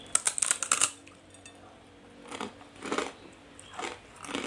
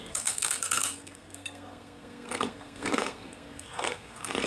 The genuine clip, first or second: first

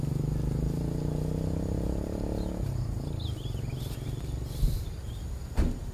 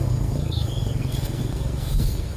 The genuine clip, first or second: first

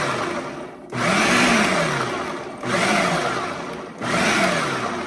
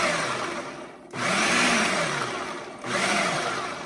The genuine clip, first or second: first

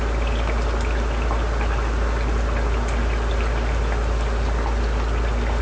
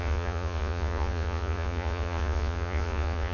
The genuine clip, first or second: first